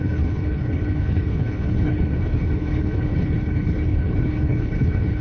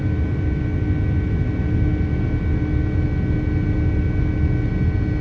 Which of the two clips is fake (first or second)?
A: first